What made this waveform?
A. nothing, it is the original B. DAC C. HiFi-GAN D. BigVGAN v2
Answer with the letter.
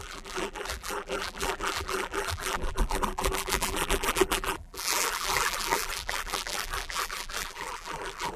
D